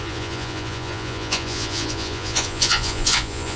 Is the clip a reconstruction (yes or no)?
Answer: yes